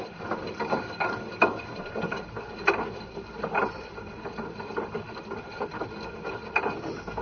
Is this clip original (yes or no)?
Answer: yes